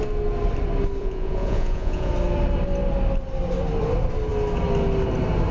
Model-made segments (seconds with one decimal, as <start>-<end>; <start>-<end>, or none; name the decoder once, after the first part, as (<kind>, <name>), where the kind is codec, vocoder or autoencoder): 1.0-2.1 (vocoder, Vocos)